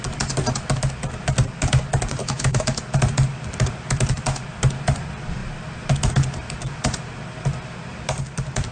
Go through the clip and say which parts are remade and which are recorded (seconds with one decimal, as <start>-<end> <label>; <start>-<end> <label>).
0.0-2.2 recorded; 2.2-2.8 remade; 2.8-8.7 recorded